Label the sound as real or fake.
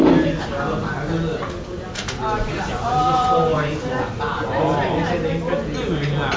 real